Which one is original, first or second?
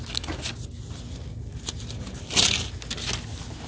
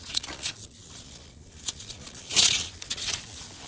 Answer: first